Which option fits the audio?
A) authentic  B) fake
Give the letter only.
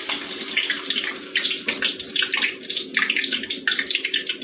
A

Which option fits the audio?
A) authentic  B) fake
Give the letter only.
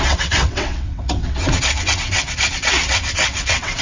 B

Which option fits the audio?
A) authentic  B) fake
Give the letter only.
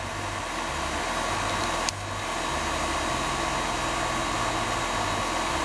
A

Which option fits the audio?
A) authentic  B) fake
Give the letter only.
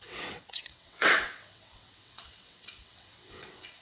B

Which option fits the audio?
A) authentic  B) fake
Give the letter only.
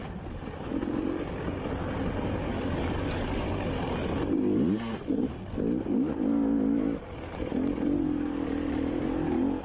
A